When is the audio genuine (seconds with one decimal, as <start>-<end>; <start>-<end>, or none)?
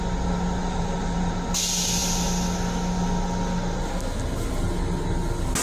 0.0-0.6; 1.3-5.6